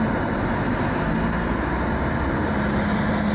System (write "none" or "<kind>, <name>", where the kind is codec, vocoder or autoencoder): none